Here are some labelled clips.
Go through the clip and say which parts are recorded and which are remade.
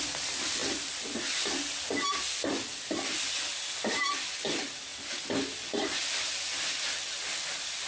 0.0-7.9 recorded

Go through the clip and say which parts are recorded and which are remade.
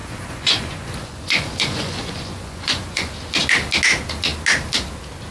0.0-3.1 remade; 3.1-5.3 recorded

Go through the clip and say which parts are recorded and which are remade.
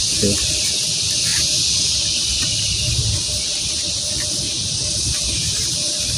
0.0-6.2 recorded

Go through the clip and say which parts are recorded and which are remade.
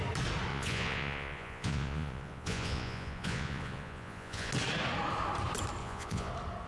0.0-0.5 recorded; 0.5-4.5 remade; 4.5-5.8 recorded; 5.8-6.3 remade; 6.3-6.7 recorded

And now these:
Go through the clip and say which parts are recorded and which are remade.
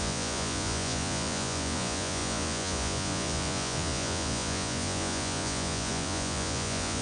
0.0-7.0 remade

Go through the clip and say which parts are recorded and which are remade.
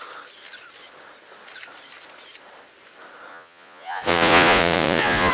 0.0-3.3 recorded; 3.3-5.3 remade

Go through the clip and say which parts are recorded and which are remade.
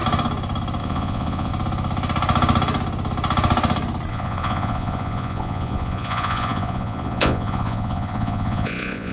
0.0-0.8 recorded; 0.8-1.5 remade; 1.5-4.1 recorded; 4.1-9.1 remade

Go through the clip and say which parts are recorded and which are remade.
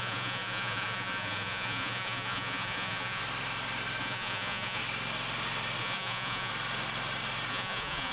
0.0-3.2 remade; 3.2-4.0 recorded; 4.0-4.8 remade; 4.8-5.8 recorded; 5.8-6.5 remade; 6.5-7.5 recorded; 7.5-8.1 remade